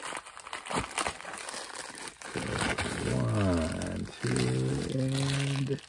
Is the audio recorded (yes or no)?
yes